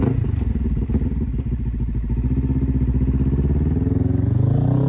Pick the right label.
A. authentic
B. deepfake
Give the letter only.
A